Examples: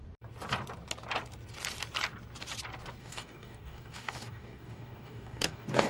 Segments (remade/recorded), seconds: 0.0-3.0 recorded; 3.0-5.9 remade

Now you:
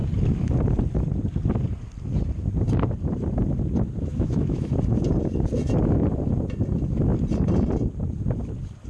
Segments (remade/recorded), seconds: 0.0-4.1 recorded; 4.1-4.7 remade; 4.7-8.9 recorded

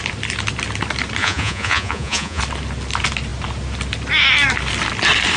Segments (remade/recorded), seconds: 0.0-1.2 recorded; 1.2-2.4 remade; 2.4-5.4 recorded

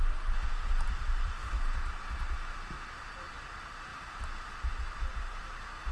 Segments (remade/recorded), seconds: 0.0-1.4 remade; 1.4-3.0 recorded; 3.0-3.9 remade; 3.9-4.6 recorded; 4.6-5.9 remade